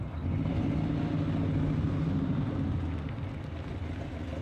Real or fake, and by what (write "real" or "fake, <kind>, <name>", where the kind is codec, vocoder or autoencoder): real